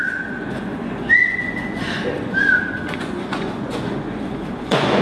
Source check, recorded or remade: remade